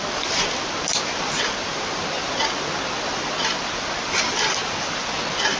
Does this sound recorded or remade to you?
recorded